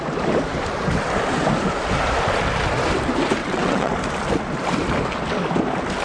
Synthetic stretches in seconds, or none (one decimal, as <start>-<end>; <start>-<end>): 3.4-3.9